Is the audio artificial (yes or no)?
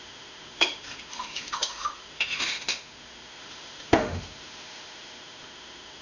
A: yes